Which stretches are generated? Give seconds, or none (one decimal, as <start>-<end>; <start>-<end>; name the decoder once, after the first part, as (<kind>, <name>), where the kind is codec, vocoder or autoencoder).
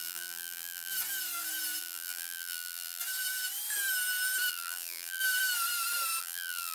0.0-0.9 (vocoder, BigVGAN v2); 1.8-3.0; 4.5-5.2; 6.2-6.7